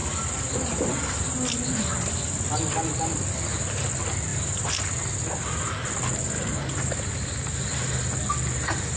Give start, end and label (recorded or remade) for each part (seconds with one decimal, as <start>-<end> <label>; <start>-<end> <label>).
0.0-9.0 recorded